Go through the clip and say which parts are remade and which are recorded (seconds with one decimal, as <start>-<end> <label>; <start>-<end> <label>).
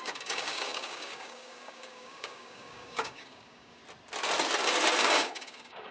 0.0-3.8 remade; 3.8-5.0 recorded; 5.0-5.9 remade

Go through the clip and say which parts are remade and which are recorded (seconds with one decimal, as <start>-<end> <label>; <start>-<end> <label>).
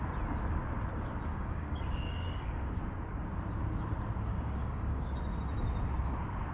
0.0-1.3 recorded; 1.3-2.8 remade; 2.8-4.3 recorded; 4.3-5.2 remade; 5.2-6.5 recorded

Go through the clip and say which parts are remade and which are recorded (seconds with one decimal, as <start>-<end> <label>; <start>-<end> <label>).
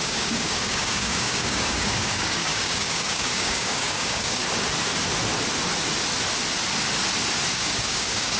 0.0-4.4 remade; 4.4-7.5 recorded; 7.5-8.4 remade